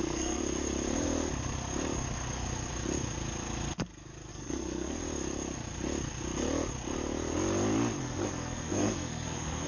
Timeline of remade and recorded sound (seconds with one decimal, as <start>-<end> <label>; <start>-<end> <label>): 0.0-0.4 remade; 0.4-4.3 recorded; 4.3-5.0 remade; 5.0-8.0 recorded; 8.0-9.7 remade